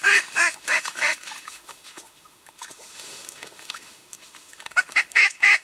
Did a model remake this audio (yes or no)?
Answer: yes